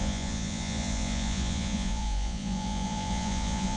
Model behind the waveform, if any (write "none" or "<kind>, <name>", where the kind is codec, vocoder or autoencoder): vocoder, Vocos